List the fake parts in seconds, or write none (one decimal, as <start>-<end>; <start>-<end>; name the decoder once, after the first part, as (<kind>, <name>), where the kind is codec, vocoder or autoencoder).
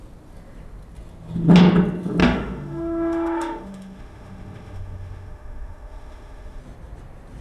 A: 2.2-6.6 (autoencoder, DAC-VAE)